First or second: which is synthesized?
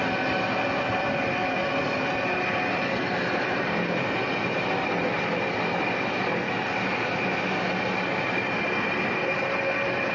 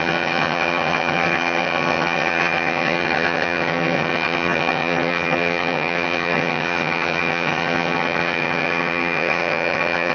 second